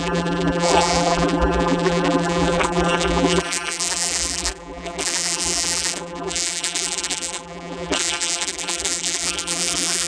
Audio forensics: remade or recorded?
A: remade